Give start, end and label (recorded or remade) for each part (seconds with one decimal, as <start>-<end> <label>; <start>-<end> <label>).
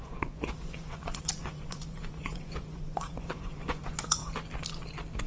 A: 0.0-4.2 remade; 4.2-5.3 recorded